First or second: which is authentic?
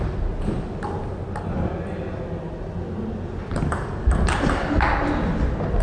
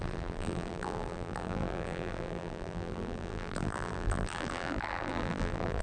first